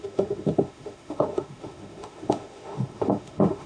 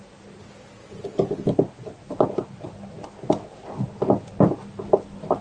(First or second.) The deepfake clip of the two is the first